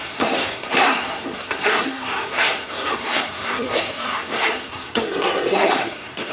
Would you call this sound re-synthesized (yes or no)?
yes